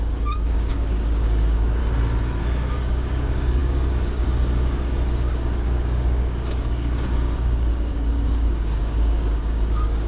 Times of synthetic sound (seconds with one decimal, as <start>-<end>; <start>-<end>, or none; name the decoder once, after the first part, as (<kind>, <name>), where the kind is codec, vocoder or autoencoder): 0.0-1.8 (codec, DAC); 2.4-10.1